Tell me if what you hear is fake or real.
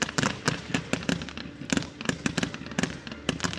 real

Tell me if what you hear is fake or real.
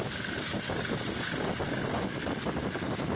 real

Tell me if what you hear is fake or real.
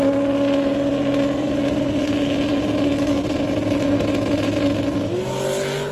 real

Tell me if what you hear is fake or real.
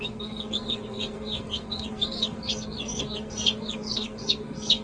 fake